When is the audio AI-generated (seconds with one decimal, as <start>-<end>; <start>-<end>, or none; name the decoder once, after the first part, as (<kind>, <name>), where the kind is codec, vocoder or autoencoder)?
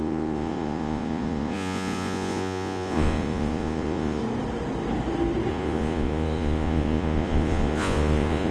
0.0-4.2 (vocoder, Vocos); 5.5-8.5